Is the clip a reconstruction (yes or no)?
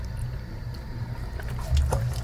yes